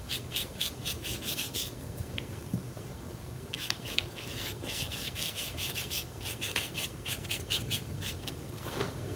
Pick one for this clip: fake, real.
fake